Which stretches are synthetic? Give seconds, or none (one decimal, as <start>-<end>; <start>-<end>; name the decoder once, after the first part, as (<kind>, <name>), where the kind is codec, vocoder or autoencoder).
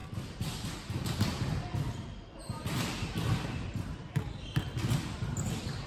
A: 0.0-5.9 (vocoder, BigVGAN v2)